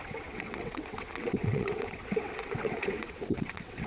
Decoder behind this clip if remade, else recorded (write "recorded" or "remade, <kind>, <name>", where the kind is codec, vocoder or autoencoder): remade, vocoder, WaveNeXt